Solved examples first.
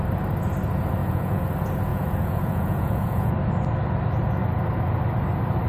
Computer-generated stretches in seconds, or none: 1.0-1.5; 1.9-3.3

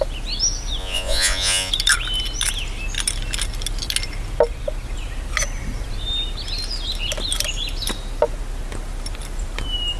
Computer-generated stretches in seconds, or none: 0.8-1.7

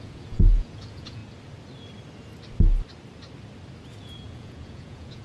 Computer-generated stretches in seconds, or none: 0.0-1.2; 4.0-5.2

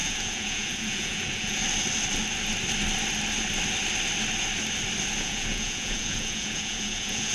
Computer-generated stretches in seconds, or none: 0.0-1.6; 5.2-7.3

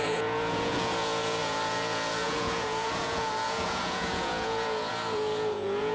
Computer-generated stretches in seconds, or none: 0.0-5.9

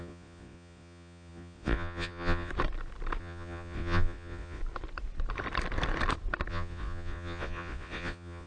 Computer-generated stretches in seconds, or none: 0.0-2.5; 3.2-4.6; 6.5-8.5

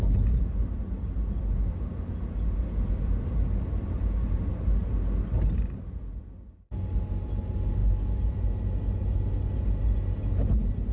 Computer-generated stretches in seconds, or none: none

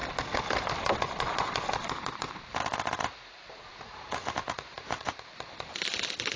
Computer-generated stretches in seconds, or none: 3.0-5.1